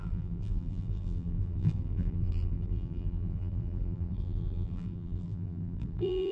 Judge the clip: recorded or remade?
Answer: remade